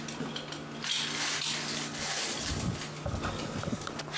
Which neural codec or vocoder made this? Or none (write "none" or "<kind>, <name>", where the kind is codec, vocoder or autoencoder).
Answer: none